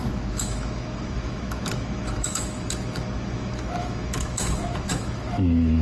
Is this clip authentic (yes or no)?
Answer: no